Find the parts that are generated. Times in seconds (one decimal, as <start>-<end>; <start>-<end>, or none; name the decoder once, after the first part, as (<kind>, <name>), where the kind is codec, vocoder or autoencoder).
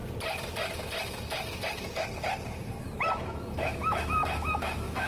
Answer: 2.8-5.1 (autoencoder, DAC-VAE)